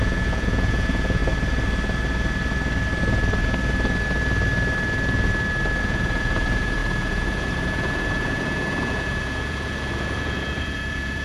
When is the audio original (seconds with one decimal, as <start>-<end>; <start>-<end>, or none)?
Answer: 1.2-5.8